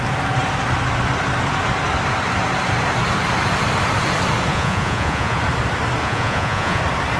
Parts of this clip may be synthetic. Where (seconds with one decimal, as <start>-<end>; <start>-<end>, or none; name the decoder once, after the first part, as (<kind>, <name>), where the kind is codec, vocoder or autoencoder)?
4.5-5.4 (vocoder, Vocos); 6.0-6.8